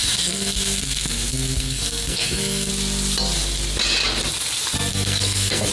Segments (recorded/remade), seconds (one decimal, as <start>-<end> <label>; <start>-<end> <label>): 0.0-2.7 remade; 2.7-4.9 recorded; 4.9-5.7 remade